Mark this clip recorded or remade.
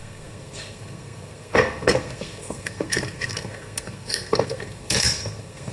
remade